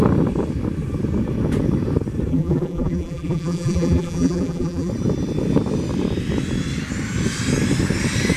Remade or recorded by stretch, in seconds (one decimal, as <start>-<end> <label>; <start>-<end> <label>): 0.0-2.3 recorded; 2.3-4.9 remade; 4.9-8.4 recorded